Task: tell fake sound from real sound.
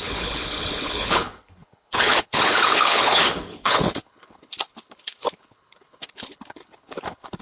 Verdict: fake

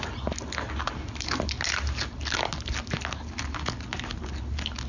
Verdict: real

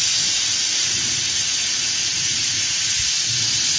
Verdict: real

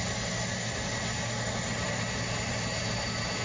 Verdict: real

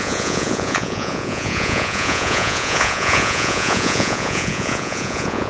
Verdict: fake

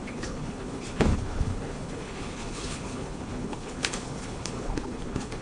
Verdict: fake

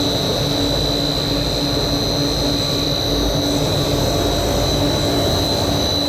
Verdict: real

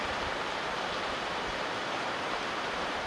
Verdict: fake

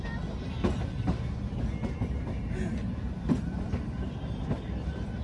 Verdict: real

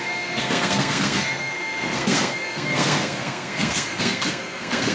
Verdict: fake